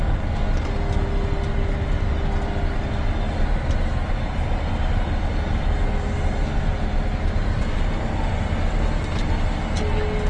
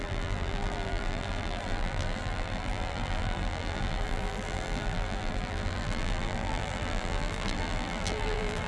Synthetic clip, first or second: second